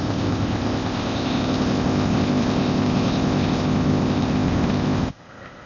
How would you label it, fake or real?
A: fake